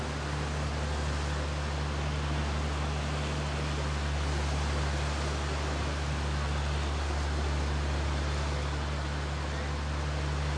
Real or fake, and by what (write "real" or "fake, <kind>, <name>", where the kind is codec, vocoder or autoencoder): real